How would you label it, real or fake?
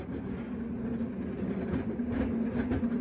real